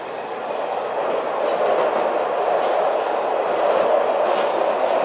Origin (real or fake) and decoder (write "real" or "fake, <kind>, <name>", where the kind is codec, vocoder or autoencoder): real